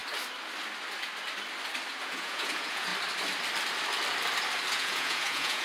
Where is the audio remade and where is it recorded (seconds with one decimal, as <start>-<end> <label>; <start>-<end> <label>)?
0.0-1.9 recorded; 1.9-2.9 remade; 2.9-4.7 recorded; 4.7-5.6 remade